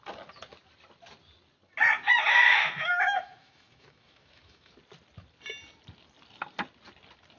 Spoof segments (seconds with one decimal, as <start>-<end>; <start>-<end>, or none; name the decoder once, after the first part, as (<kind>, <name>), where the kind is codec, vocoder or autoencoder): 2.4-4.7 (autoencoder, DAC-VAE)